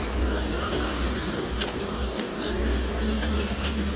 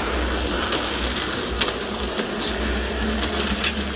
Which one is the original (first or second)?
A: second